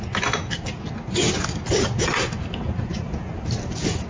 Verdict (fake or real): real